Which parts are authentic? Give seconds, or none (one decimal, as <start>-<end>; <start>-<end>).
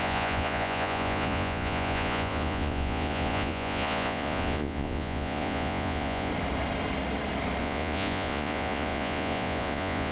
6.3-7.6